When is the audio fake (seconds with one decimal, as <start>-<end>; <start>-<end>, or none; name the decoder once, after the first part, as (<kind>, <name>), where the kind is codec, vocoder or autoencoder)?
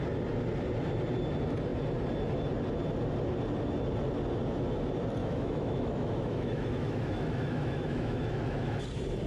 5.2-8.8 (autoencoder, DAC-VAE)